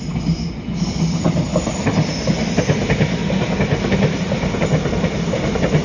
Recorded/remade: recorded